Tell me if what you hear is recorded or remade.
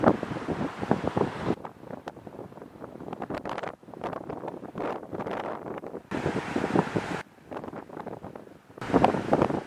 remade